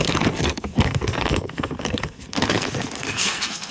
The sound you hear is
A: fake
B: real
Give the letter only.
A